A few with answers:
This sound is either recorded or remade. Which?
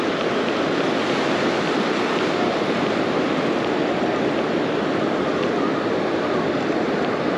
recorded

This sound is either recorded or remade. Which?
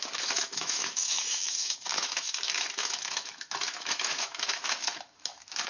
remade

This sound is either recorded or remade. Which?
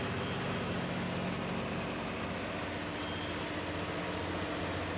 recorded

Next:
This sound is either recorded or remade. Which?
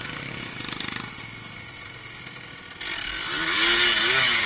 recorded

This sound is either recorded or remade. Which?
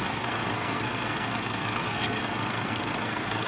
remade